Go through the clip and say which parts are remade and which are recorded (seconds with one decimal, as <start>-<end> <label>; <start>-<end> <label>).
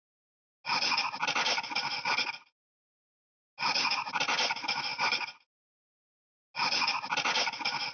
0.0-4.9 recorded; 4.9-5.9 remade; 5.9-7.9 recorded